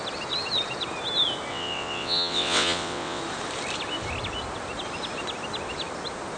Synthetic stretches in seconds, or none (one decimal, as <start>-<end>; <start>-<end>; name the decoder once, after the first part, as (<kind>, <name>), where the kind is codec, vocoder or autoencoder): 1.5-3.2 (vocoder, WaveNeXt)